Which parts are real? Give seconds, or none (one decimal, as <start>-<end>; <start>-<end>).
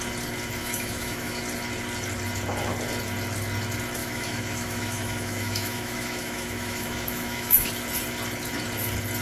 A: 0.0-0.6; 1.4-4.0; 7.7-9.2